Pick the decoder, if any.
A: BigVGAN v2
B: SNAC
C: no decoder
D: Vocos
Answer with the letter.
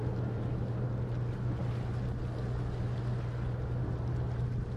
C